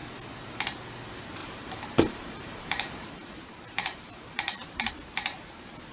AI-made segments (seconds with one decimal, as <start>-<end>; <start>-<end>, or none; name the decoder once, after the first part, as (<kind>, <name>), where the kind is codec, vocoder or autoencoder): 1.4-4.9 (vocoder, BigVGAN v2)